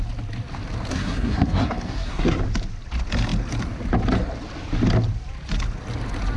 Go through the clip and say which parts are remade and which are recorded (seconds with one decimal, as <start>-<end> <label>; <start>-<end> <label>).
0.0-0.9 recorded; 0.9-2.4 remade; 2.4-6.4 recorded